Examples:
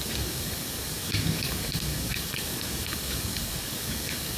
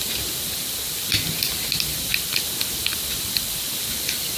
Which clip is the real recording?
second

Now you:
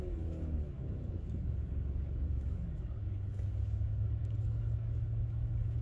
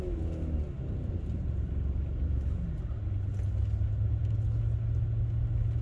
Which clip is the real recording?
second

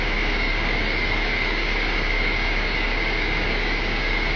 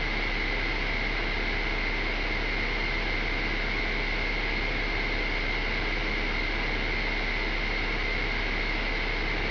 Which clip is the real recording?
second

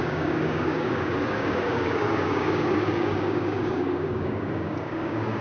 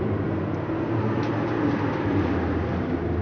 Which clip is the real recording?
second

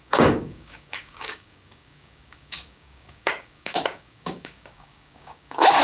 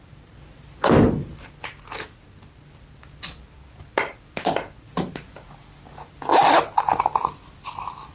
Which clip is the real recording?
second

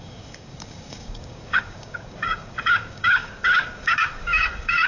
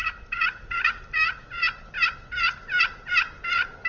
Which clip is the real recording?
second